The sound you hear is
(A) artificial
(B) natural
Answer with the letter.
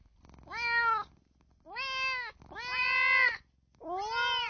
B